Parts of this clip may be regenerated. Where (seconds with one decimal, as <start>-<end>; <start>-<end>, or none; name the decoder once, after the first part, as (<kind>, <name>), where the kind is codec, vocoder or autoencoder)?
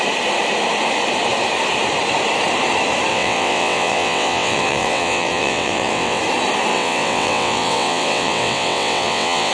3.1-6.2 (vocoder, WaveNeXt); 6.7-9.5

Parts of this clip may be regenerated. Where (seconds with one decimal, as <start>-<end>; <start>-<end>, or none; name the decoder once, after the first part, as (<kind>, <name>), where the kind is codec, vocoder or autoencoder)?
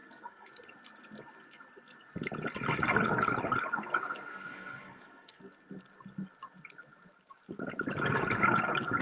0.0-0.5 (codec, SNAC); 4.3-5.4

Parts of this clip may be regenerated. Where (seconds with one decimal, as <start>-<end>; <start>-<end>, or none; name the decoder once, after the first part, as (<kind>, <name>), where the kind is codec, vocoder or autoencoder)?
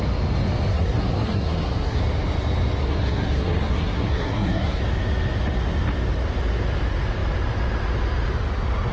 0.7-2.0 (codec, SNAC); 2.8-4.8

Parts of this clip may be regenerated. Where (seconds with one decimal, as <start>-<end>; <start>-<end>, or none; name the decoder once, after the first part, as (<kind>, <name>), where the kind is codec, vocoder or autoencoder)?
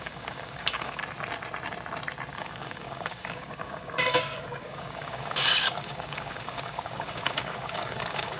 0.0-1.0 (codec, DAC); 2.3-8.4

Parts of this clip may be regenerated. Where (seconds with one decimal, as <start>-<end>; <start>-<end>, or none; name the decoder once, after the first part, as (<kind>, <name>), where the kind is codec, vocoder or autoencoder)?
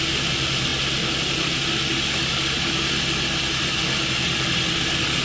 none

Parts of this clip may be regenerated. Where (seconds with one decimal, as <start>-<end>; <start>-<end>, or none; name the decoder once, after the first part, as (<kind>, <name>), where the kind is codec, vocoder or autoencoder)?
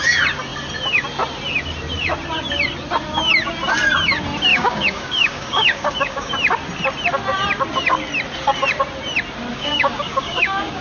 4.5-6.3 (codec, DAC); 9.5-10.8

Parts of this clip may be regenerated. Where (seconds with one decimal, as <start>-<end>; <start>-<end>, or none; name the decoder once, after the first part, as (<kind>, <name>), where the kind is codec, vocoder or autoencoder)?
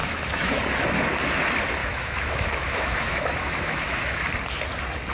0.0-0.6 (autoencoder, DAC-VAE); 1.8-4.2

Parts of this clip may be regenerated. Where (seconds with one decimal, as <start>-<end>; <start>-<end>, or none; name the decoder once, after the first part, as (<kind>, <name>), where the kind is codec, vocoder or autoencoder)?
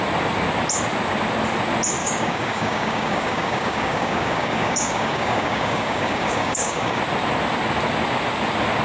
2.0-7.0 (codec, DAC)